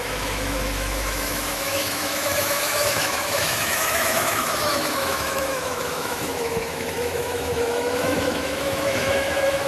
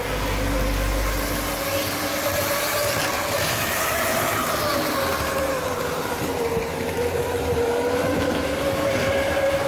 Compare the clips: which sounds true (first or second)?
second